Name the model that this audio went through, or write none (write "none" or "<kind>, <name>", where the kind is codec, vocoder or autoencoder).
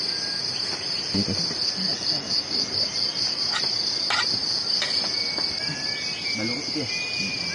none